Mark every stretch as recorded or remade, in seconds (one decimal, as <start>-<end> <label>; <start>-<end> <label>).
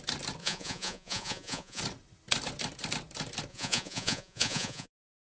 0.0-0.4 recorded; 0.4-1.8 remade; 1.8-3.5 recorded; 3.5-4.9 remade; 4.9-5.4 recorded